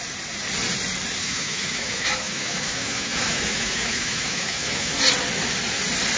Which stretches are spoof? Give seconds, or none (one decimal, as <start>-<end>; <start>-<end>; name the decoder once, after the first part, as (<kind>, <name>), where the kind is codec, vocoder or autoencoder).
1.2-4.9 (autoencoder, DAC-VAE)